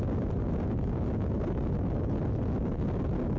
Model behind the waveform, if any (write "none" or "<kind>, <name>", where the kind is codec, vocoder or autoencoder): none